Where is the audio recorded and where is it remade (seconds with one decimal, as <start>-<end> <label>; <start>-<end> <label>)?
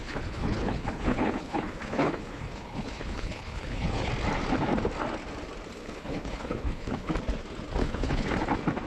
0.0-4.1 remade; 4.1-5.8 recorded; 5.8-7.1 remade; 7.1-7.8 recorded; 7.8-8.3 remade; 8.3-8.9 recorded